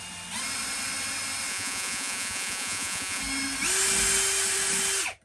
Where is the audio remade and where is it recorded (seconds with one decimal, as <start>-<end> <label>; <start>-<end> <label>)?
0.0-1.5 recorded; 1.5-3.2 remade; 3.2-5.2 recorded